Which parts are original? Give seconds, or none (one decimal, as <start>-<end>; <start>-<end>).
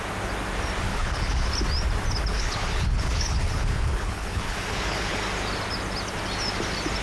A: 0.0-0.9; 1.5-2.3; 5.2-7.0